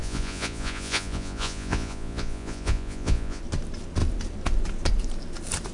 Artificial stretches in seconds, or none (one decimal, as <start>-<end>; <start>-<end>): 0.0-3.4